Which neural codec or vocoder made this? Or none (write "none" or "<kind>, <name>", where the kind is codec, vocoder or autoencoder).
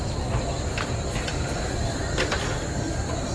none